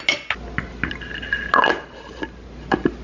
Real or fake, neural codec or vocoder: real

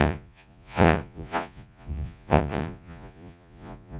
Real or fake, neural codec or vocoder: fake, vocoder, Vocos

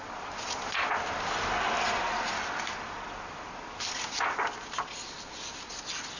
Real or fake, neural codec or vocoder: real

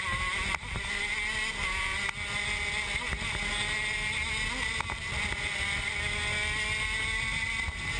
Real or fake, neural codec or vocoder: real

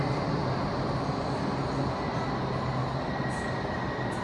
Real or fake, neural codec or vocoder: real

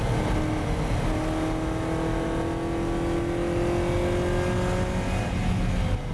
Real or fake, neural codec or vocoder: real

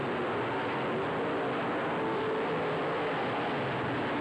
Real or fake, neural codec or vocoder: real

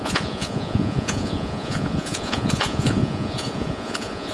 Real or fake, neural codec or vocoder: fake, vocoder, Vocos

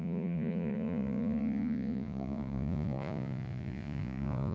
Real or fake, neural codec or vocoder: fake, vocoder, Vocos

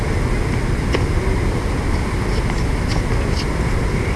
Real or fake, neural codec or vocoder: real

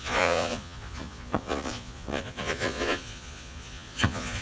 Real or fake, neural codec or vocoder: fake, vocoder, Vocos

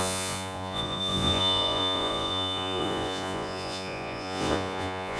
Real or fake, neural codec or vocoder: fake, vocoder, Vocos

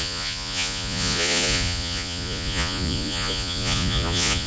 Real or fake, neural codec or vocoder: fake, vocoder, Vocos